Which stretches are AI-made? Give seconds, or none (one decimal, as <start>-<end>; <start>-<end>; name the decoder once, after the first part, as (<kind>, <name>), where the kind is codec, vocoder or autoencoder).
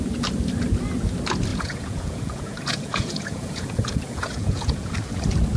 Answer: 1.5-4.9 (vocoder, Vocos)